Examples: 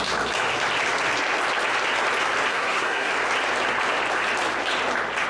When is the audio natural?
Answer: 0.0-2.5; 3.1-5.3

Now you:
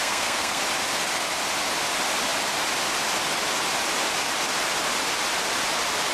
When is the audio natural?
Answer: 0.6-6.1

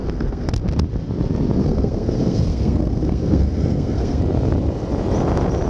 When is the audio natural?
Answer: 0.5-1.6; 4.2-5.7

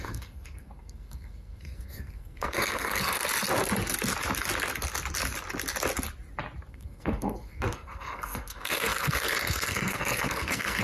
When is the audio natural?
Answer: 3.2-6.7

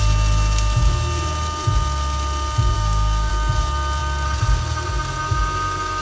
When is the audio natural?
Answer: 0.0-2.7; 3.3-6.0

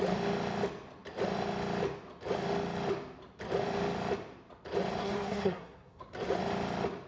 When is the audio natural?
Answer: 0.0-5.0; 6.0-7.1